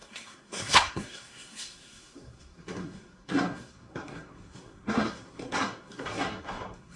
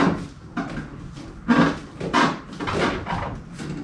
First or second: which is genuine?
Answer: second